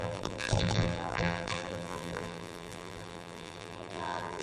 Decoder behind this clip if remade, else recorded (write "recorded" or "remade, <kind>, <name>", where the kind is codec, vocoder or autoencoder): remade, vocoder, BigVGAN v2